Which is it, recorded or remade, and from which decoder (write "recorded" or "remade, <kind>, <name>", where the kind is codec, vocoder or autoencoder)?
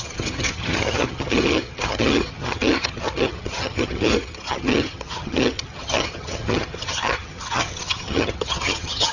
remade, vocoder, HiFi-GAN